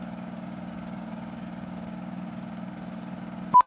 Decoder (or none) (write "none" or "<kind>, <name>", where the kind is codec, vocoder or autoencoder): codec, DAC